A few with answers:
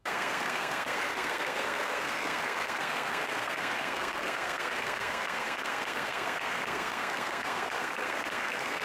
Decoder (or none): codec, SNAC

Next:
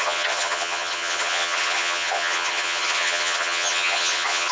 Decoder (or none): vocoder, HiFi-GAN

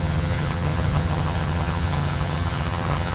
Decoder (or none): vocoder, HiFi-GAN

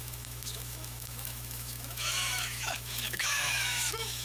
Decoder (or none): autoencoder, DAC-VAE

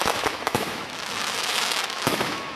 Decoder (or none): autoencoder, DAC-VAE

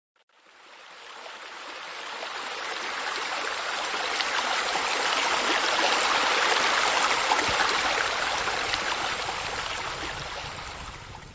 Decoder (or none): none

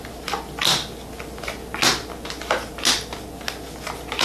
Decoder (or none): none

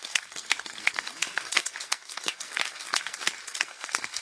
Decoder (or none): codec, SNAC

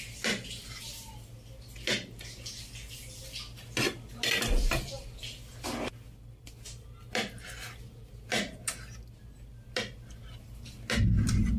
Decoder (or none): none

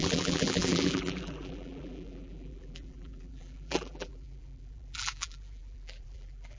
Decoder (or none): vocoder, BigVGAN v2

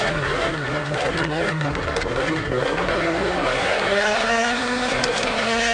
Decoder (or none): codec, SNAC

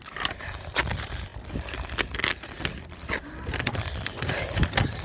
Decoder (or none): none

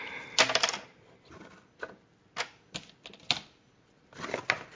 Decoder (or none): none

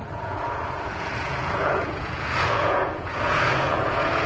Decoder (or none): vocoder, Vocos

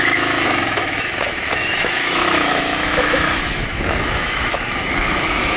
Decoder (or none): autoencoder, DAC-VAE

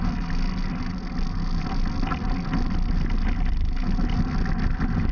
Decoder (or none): none